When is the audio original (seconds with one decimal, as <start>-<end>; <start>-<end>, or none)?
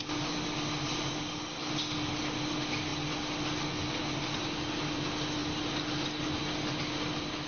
0.0-7.5